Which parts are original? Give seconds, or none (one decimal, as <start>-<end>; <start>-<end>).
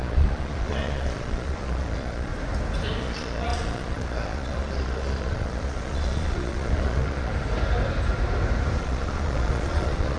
2.3-3.0; 7.3-8.8